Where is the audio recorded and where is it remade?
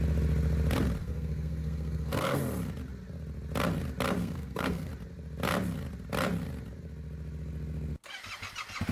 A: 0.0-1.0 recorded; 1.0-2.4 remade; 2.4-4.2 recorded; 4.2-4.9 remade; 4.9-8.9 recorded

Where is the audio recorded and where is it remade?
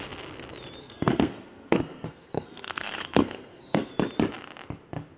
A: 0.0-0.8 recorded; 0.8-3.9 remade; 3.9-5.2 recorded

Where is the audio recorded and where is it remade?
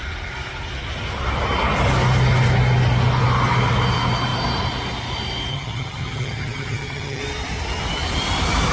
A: 0.0-5.5 recorded; 5.5-7.2 remade; 7.2-8.7 recorded